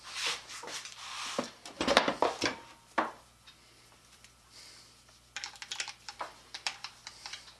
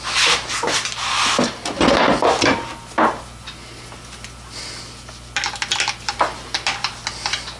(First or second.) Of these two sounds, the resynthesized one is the first